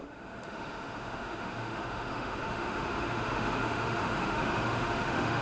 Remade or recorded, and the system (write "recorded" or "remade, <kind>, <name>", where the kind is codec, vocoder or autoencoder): remade, autoencoder, DAC-VAE